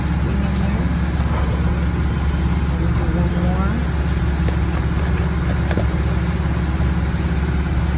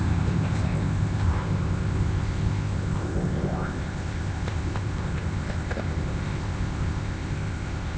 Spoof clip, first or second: second